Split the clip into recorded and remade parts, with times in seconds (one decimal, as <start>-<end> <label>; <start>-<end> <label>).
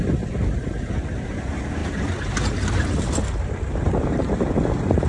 0.0-5.1 recorded